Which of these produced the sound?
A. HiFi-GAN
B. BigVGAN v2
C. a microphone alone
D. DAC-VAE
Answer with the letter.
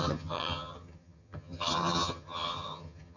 A